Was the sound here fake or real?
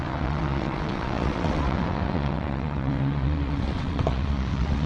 fake